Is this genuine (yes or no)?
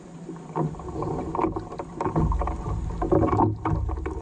yes